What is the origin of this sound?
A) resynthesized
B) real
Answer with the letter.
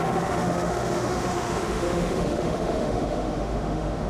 A